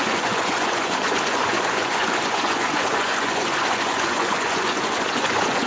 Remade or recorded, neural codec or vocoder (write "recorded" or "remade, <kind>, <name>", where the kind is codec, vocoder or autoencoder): remade, vocoder, Vocos